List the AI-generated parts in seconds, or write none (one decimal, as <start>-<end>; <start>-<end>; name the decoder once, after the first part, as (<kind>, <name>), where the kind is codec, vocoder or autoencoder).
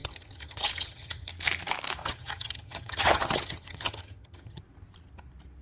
0.0-1.3 (vocoder, HiFi-GAN); 2.0-4.6